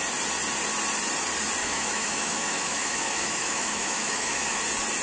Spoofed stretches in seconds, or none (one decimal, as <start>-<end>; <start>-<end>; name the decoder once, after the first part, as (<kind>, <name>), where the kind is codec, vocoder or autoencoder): 1.6-4.6 (autoencoder, DAC-VAE)